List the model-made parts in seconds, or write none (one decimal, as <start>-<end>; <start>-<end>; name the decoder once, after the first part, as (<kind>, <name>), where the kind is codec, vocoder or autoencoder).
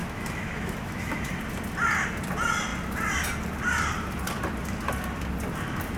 0.0-1.3 (autoencoder, DAC-VAE)